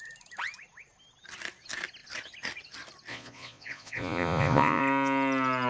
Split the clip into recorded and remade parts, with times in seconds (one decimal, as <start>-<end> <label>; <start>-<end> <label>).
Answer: 0.0-3.1 recorded; 3.1-4.8 remade; 4.8-5.7 recorded